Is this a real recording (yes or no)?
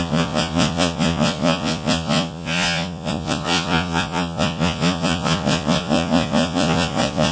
no